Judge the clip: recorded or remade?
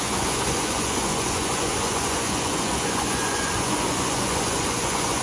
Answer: remade